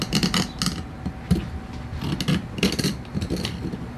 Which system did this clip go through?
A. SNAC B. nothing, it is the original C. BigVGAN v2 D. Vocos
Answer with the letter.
B